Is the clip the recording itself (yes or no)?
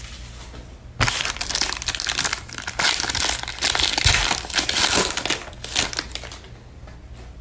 yes